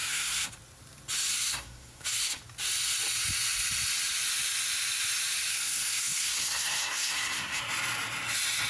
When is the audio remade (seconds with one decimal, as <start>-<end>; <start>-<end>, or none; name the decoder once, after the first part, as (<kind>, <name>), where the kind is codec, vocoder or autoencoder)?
0.0-0.5 (codec, SNAC); 1.3-2.4; 5.5-7.6